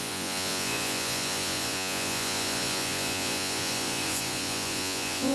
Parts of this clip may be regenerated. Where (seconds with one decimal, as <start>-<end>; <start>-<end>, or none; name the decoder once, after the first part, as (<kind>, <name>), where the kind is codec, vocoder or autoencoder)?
0.0-5.3 (vocoder, Vocos)